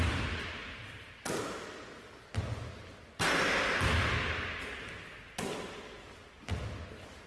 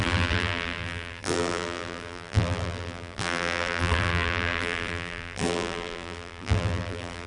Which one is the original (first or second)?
first